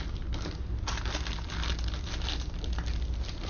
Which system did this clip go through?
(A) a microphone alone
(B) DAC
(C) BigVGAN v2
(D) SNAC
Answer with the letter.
A